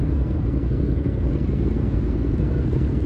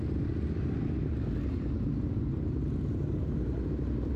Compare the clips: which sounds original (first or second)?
second